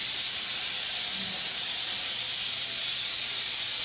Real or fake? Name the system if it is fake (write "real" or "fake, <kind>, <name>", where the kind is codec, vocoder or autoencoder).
real